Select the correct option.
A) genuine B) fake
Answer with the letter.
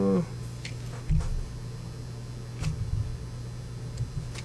A